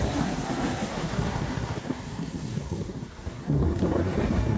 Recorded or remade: remade